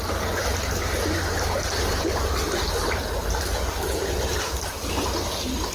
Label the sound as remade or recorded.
recorded